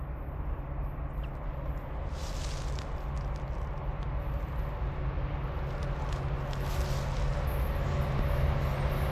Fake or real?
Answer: real